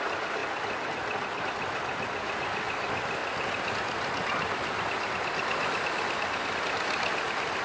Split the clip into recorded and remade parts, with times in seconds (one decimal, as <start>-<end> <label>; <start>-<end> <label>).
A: 0.0-7.6 recorded